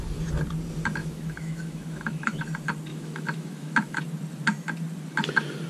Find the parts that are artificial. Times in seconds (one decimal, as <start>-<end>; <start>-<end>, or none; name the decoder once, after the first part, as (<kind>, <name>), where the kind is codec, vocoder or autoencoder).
1.0-2.4 (autoencoder, DAC-VAE); 2.9-4.0